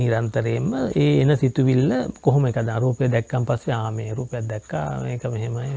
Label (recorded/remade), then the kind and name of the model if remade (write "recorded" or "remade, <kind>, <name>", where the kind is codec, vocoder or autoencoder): recorded